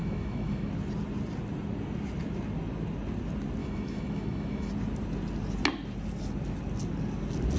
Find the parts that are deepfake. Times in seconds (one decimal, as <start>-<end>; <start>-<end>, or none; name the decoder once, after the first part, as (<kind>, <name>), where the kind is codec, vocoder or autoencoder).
0.0-0.7 (autoencoder, DAC-VAE); 3.6-4.7